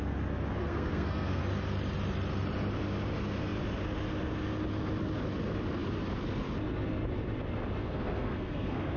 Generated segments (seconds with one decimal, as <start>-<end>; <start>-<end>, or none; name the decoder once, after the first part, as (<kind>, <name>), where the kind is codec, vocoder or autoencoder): 0.6-1.4 (codec, SNAC); 7.8-9.0